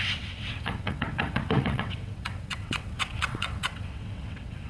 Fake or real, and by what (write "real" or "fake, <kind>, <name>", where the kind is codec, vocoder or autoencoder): fake, vocoder, WaveNeXt